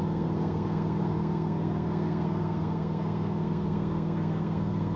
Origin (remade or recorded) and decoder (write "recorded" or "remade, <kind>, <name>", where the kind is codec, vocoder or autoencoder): remade, codec, SNAC